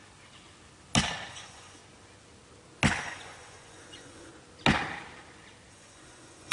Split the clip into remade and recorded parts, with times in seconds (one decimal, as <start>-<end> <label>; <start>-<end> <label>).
0.0-1.3 recorded; 1.3-1.8 remade; 1.8-3.0 recorded; 3.0-4.3 remade; 4.3-5.7 recorded; 5.7-6.5 remade